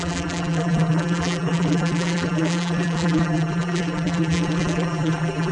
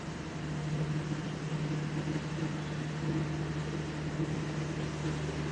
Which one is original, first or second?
second